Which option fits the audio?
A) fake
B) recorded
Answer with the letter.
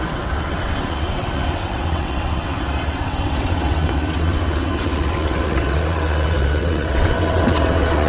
A